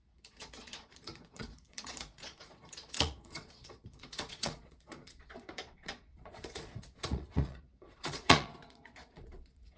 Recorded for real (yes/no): no